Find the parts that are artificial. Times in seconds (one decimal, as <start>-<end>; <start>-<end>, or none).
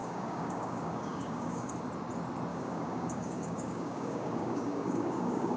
0.0-1.7; 2.5-5.6